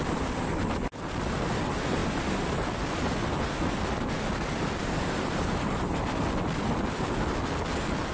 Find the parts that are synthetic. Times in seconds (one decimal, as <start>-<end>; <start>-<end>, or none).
4.8-6.0